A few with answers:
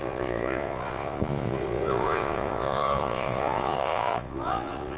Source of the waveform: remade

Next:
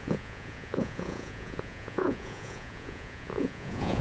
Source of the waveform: remade